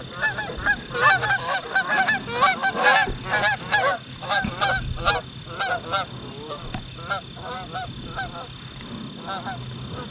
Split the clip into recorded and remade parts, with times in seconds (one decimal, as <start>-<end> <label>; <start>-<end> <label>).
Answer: 0.0-10.1 recorded